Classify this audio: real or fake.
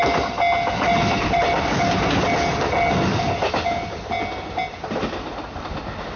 real